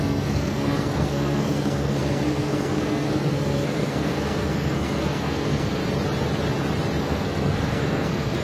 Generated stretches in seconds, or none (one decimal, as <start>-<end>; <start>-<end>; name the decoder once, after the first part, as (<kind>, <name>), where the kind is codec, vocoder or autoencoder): 0.0-5.8 (codec, SNAC); 7.0-8.4

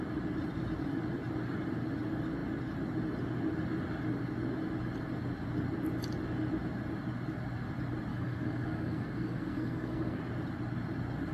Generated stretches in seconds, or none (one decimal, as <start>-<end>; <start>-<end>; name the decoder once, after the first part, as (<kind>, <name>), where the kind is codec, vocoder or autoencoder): 8.1-10.2 (codec, SNAC)

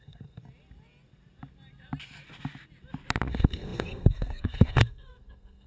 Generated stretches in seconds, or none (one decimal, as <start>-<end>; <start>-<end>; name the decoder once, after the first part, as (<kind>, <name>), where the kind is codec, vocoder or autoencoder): 0.0-0.4 (codec, SNAC); 3.3-5.7

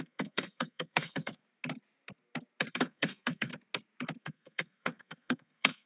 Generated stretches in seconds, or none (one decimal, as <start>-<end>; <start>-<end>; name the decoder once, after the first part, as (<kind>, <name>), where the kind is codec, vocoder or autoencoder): 0.0-1.4 (codec, SNAC); 2.7-3.5; 4.2-5.9